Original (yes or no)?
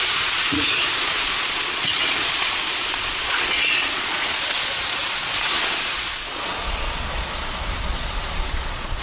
no